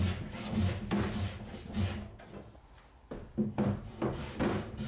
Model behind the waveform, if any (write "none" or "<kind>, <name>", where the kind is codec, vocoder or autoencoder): none